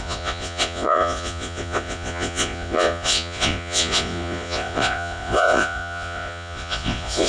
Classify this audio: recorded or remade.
remade